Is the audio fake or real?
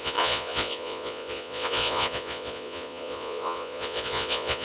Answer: fake